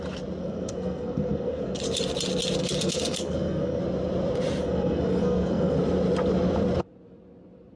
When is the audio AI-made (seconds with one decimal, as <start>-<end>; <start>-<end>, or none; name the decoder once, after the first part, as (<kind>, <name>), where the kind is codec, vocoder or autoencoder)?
0.4-1.8 (codec, SNAC); 2.6-3.8; 4.6-5.8

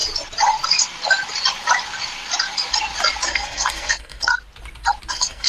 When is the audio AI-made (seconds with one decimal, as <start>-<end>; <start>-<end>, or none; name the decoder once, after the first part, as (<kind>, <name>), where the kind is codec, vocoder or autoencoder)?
3.3-4.3 (codec, SNAC); 5.1-5.5

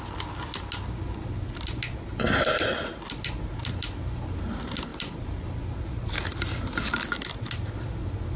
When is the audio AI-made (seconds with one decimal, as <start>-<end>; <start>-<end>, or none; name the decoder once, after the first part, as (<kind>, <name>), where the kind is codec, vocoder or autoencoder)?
none

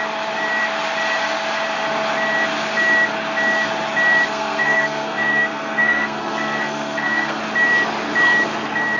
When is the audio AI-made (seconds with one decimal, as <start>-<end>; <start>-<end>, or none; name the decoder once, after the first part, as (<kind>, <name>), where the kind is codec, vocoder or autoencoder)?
4.3-7.4 (codec, SNAC)